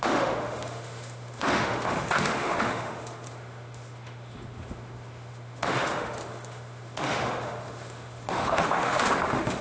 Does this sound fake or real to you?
fake